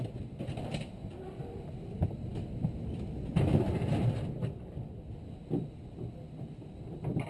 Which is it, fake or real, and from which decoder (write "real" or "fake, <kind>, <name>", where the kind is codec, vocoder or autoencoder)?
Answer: real